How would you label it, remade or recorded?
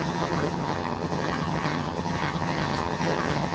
remade